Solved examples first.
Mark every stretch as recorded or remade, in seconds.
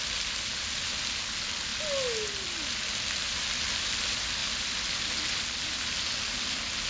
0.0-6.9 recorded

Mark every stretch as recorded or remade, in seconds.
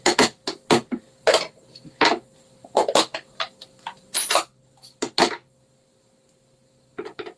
0.0-7.4 recorded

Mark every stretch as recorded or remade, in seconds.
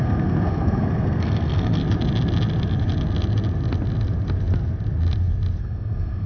0.0-1.8 remade; 1.8-5.6 recorded; 5.6-6.3 remade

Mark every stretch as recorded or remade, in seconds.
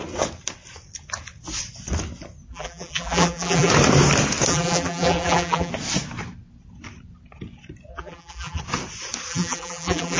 0.0-2.5 recorded; 2.5-3.7 remade; 3.7-4.5 recorded; 4.5-5.7 remade; 5.7-7.9 recorded; 7.9-8.6 remade; 8.6-9.3 recorded; 9.3-10.2 remade